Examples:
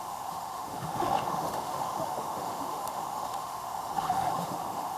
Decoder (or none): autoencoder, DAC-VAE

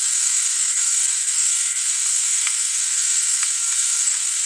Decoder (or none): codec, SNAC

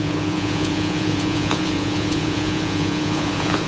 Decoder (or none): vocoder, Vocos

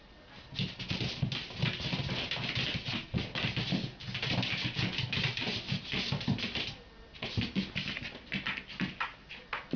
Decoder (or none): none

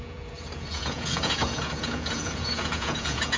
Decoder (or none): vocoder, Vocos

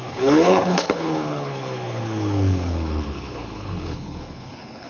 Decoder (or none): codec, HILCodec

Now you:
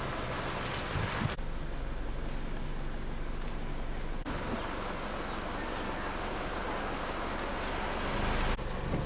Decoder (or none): none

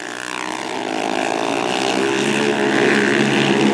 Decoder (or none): none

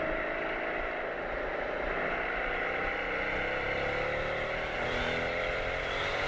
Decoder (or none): vocoder, BigVGAN v2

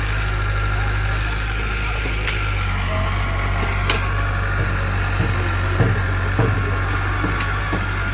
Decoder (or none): none